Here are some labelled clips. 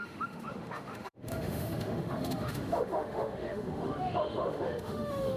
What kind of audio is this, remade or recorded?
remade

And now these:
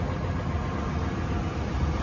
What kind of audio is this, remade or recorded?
recorded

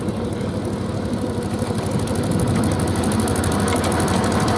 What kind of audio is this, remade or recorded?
recorded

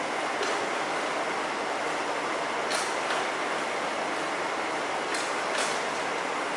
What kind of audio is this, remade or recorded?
recorded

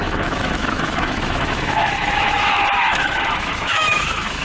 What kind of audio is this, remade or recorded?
remade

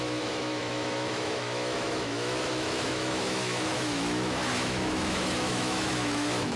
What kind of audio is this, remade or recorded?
remade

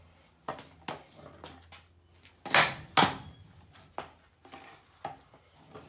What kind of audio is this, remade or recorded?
recorded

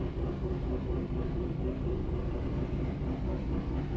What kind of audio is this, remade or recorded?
recorded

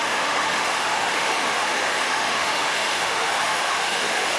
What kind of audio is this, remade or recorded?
remade